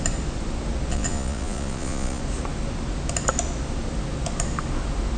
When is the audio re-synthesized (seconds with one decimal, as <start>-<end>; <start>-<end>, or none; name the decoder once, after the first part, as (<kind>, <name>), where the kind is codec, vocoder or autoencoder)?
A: 0.9-2.2 (vocoder, Vocos)